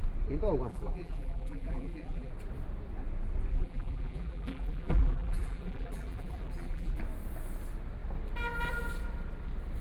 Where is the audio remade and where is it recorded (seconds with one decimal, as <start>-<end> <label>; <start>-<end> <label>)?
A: 0.0-0.7 recorded; 0.7-2.3 remade; 2.3-3.5 recorded; 3.5-7.0 remade; 7.0-9.8 recorded